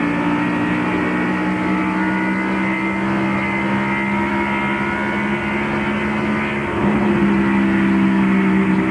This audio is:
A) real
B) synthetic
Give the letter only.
A